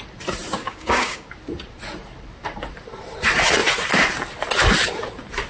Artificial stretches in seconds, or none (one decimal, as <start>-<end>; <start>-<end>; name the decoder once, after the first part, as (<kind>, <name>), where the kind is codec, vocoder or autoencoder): 0.6-1.3 (codec, DAC)